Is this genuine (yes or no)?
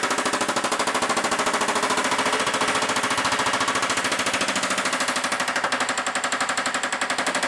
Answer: yes